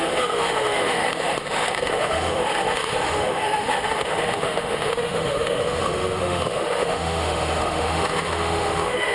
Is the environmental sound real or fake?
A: fake